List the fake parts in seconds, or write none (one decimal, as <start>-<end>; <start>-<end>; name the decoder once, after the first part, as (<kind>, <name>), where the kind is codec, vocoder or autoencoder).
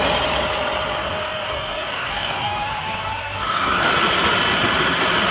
1.0-3.9 (codec, DAC)